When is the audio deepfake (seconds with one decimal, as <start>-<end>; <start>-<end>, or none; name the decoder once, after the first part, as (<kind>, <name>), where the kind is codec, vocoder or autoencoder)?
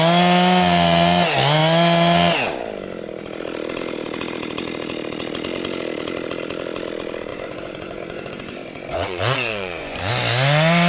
7.3-10.1 (vocoder, Vocos)